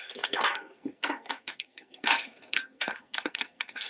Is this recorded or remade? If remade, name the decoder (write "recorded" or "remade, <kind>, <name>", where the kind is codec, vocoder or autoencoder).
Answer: remade, codec, SNAC